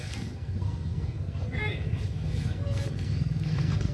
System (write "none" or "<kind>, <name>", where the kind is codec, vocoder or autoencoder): codec, SNAC